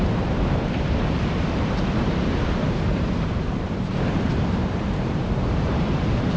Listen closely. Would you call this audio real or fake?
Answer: fake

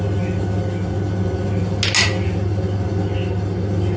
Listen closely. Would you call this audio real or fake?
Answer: real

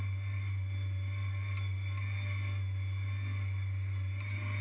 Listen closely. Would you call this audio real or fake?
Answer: real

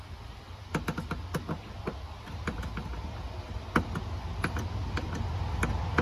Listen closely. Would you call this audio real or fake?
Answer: real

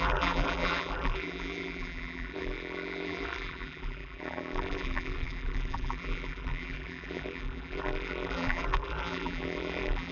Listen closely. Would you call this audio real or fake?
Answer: fake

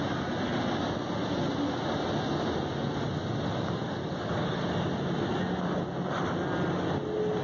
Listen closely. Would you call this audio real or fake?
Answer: real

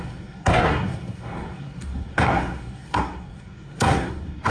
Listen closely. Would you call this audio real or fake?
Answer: fake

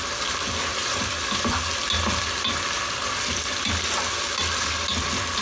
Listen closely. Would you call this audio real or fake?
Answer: real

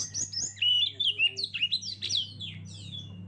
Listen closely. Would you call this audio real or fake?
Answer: real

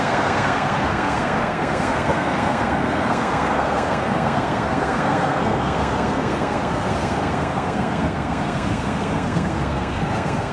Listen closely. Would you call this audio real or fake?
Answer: fake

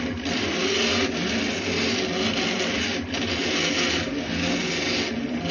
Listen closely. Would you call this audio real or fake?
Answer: real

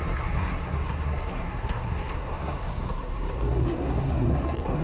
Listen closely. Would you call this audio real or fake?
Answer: fake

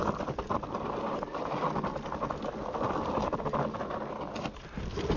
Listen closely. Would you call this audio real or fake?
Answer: real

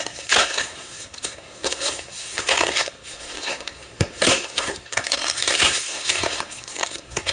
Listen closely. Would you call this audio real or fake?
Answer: fake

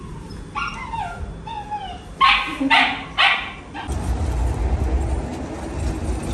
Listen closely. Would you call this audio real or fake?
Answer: real